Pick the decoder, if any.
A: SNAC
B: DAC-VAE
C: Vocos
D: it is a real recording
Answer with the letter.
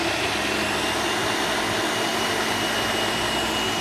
D